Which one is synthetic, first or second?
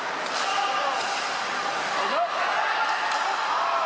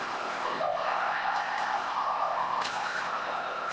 second